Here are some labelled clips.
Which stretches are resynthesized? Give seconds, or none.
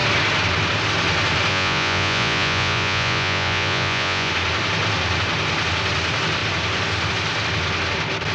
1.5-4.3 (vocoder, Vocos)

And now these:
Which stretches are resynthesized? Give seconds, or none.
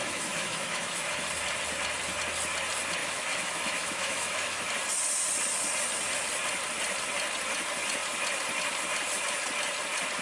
0.0-1.2 (autoencoder, DAC-VAE); 3.0-4.7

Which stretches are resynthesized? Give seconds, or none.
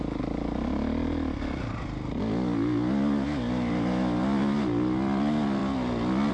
none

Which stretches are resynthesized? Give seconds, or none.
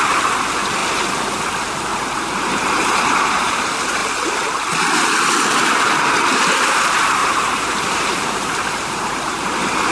1.9-3.6 (vocoder, BigVGAN v2); 7.2-9.9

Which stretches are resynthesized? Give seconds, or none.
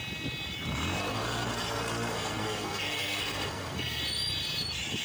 1.0-4.0 (codec, SNAC)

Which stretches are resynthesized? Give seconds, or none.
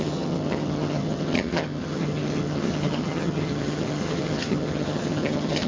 0.0-5.7 (vocoder, HiFi-GAN)